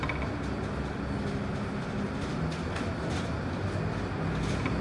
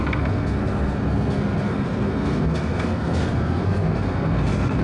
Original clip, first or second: first